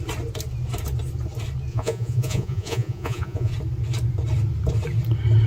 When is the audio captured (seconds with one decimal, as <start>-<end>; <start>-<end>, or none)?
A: 0.0-1.7; 3.5-5.5